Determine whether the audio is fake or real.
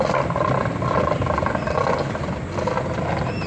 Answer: real